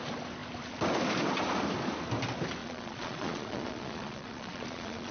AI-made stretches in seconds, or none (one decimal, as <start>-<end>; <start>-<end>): 2.6-5.1